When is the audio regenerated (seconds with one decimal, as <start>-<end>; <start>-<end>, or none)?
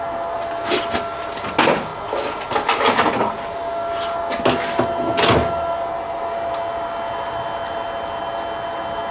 none